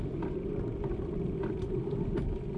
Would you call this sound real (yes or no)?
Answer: yes